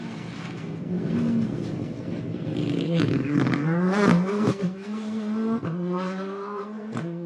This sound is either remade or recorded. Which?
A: remade